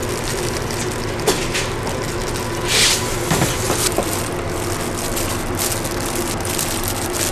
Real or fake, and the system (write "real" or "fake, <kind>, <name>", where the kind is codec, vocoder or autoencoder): real